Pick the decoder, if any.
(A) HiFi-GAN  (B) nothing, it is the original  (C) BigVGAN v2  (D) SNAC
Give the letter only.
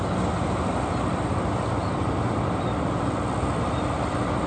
B